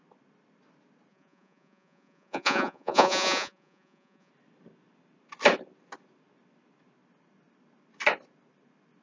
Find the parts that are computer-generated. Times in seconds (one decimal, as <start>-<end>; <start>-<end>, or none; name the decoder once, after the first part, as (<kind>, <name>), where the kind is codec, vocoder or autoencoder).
1.1-4.3 (vocoder, Vocos)